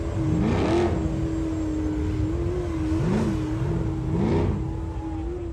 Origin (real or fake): real